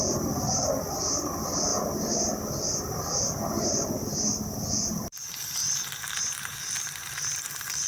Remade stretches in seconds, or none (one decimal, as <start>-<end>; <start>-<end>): 0.0-5.6; 6.3-7.9